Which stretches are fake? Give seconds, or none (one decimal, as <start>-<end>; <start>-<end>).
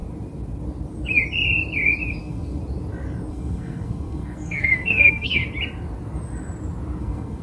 2.2-2.6; 3.3-5.4; 7.0-7.4